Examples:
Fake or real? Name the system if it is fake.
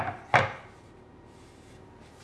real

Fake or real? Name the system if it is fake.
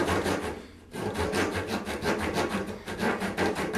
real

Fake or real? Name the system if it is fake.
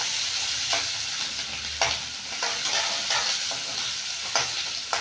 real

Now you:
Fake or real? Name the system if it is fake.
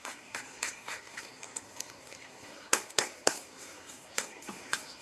fake, codec, SNAC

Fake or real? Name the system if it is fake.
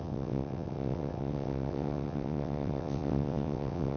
fake, vocoder, WaveNeXt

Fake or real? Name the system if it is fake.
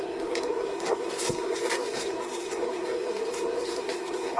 fake, codec, SNAC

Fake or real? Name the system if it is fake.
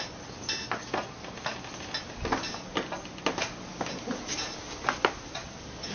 real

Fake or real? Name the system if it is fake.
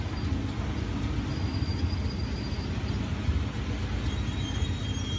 real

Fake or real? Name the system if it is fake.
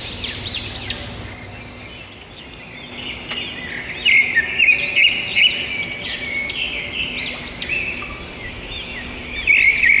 real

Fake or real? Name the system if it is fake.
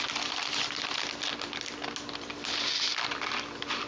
real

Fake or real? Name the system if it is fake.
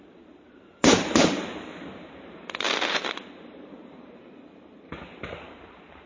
fake, vocoder, BigVGAN v2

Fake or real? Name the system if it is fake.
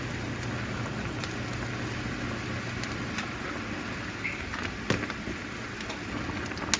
real